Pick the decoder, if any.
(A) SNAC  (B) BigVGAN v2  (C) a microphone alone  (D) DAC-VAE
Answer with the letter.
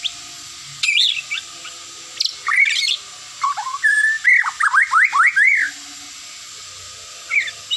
C